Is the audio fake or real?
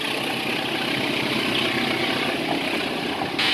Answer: real